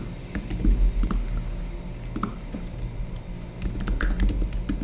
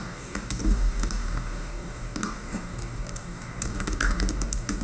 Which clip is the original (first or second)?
first